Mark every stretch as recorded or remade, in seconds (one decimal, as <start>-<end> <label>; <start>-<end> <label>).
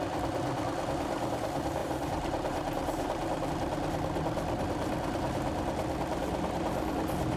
0.0-1.8 recorded; 1.8-3.5 remade; 3.5-7.4 recorded